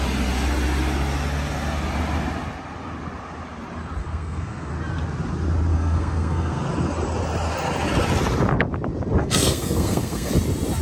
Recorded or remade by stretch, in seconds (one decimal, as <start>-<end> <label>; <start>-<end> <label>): 0.0-4.0 recorded; 4.0-4.7 remade; 4.7-5.7 recorded; 5.7-6.6 remade; 6.6-9.2 recorded; 9.2-10.3 remade; 10.3-10.8 recorded